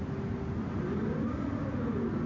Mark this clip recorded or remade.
recorded